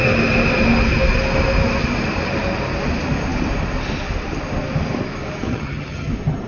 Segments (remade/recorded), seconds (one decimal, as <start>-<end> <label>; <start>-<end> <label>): 0.0-5.5 recorded; 5.5-6.1 remade; 6.1-6.5 recorded